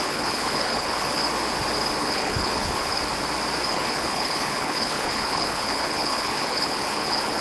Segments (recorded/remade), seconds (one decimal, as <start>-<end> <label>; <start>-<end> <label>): 0.0-1.2 remade; 1.2-2.0 recorded; 2.0-2.9 remade; 2.9-3.7 recorded; 3.7-7.4 remade